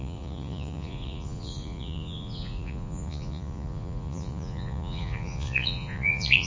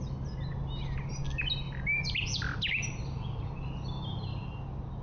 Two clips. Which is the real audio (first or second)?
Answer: second